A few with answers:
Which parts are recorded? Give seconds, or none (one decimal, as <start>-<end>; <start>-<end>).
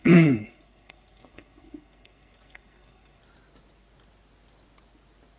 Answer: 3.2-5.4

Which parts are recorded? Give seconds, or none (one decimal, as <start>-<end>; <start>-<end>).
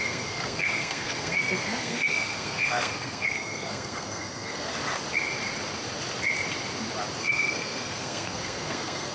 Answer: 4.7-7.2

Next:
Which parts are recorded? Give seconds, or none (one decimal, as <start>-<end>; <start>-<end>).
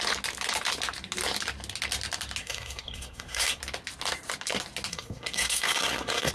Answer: 0.0-2.4; 3.6-4.9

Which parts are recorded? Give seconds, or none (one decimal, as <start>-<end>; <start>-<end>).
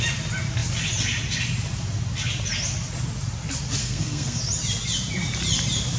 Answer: 0.0-3.8; 4.4-6.0